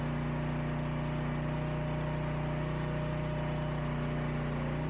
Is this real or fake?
real